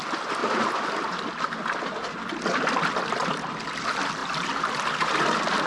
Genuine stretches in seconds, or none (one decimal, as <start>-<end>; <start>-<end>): 0.0-0.4; 1.6-4.2; 4.9-5.7